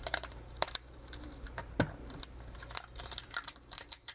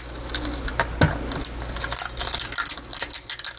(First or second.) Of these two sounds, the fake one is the first